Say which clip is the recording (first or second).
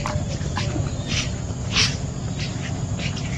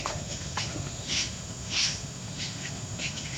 first